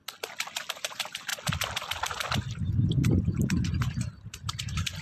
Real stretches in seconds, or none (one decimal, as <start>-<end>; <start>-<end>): 0.0-0.6; 1.3-2.8